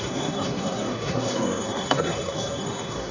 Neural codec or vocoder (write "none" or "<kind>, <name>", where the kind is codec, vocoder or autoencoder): codec, SNAC